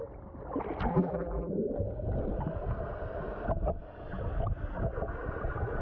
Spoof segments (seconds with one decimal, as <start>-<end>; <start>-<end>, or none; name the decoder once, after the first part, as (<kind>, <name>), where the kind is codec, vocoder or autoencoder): 0.9-1.5 (vocoder, BigVGAN v2)